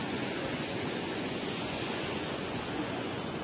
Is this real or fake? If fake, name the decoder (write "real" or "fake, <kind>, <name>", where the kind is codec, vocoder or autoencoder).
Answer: fake, vocoder, Vocos